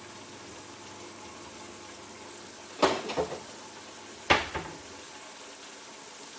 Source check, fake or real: real